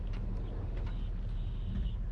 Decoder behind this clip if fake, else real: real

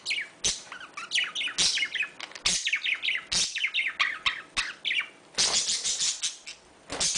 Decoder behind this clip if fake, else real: real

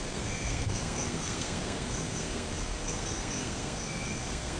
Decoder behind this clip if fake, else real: fake, codec, SNAC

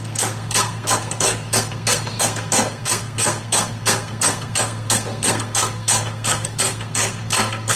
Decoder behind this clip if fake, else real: fake, codec, SNAC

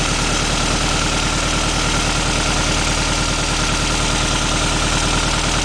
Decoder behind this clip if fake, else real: real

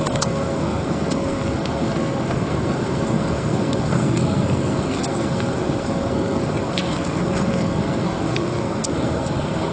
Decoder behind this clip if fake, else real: fake, codec, SNAC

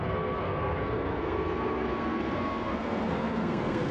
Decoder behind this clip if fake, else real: fake, codec, SNAC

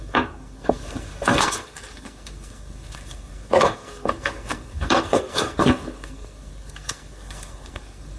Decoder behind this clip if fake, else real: fake, codec, SNAC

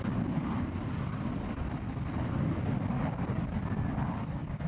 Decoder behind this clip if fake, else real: real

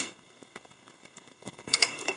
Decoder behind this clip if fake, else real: fake, codec, SNAC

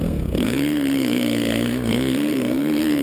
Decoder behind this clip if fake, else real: fake, codec, SNAC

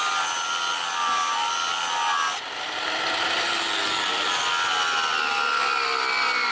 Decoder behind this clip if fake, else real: real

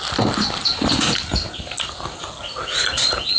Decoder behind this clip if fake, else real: real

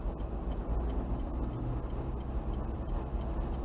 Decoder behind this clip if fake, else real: real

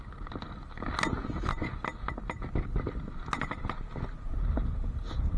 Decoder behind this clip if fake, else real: real